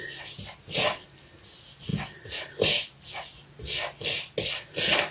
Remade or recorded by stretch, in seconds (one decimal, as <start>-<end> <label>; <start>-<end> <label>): 0.0-5.1 recorded